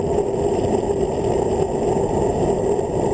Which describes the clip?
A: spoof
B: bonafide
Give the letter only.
B